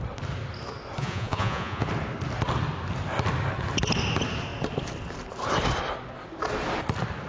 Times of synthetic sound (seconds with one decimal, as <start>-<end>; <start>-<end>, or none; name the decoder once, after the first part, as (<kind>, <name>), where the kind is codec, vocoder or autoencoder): 1.0-1.9 (vocoder, Vocos)

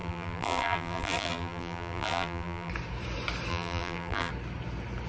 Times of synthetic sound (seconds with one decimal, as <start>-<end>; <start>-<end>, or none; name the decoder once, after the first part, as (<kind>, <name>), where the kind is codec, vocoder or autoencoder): 0.0-2.7 (vocoder, BigVGAN v2); 3.5-4.3

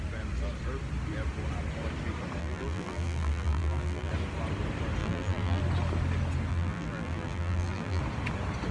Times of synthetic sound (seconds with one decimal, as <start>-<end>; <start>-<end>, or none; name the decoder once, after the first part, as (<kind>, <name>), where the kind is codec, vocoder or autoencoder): 2.4-4.1 (vocoder, BigVGAN v2); 5.0-5.6; 6.5-8.0

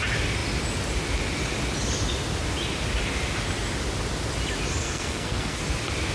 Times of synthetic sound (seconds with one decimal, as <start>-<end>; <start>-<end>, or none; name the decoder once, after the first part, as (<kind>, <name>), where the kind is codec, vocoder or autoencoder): 4.8-5.6 (codec, SNAC)

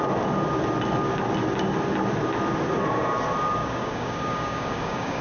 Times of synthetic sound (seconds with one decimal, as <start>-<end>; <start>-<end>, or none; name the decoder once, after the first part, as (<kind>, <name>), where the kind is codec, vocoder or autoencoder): 3.6-5.2 (codec, DAC)